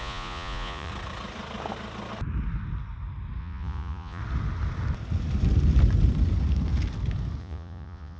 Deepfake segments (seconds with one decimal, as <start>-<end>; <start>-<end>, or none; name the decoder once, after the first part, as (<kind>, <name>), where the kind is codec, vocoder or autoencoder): 0.0-0.9 (vocoder, Vocos); 3.4-4.2; 7.4-8.2